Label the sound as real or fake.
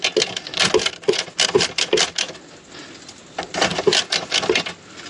real